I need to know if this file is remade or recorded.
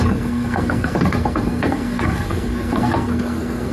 remade